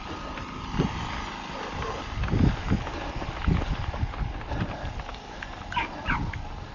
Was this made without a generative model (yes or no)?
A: yes